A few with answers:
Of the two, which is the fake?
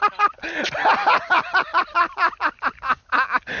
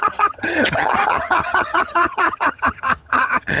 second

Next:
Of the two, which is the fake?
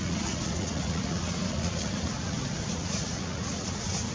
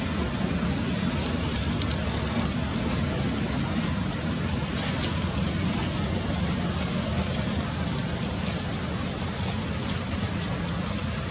first